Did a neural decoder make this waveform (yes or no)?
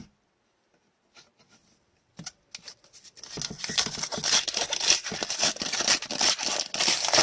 no